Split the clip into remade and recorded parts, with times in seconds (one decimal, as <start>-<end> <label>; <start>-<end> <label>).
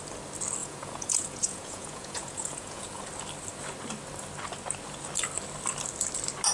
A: 0.0-0.6 recorded; 0.6-3.0 remade; 3.0-6.5 recorded